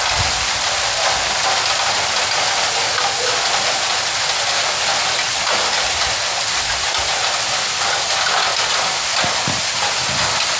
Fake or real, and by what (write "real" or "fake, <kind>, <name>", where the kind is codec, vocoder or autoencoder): real